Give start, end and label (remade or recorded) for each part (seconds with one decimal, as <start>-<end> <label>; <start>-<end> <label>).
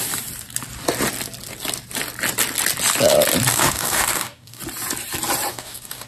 0.0-3.5 recorded; 3.5-4.6 remade; 4.6-5.5 recorded; 5.5-6.1 remade